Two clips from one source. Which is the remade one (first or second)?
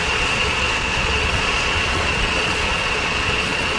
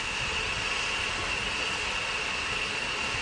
first